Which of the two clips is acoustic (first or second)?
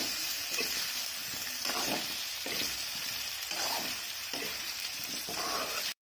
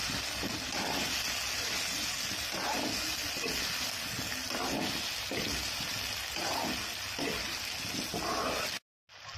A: second